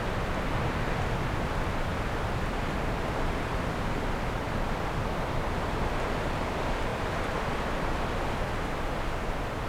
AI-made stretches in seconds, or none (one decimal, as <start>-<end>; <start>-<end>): none